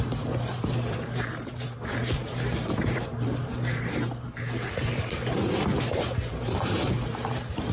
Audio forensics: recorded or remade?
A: remade